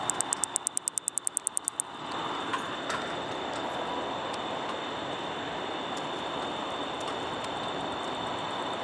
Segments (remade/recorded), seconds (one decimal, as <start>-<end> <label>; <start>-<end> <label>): 0.0-8.8 recorded